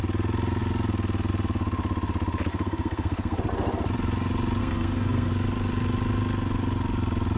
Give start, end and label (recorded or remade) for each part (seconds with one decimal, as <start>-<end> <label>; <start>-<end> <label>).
0.0-2.5 recorded; 2.5-3.4 remade; 3.4-4.6 recorded; 4.6-5.3 remade; 5.3-7.4 recorded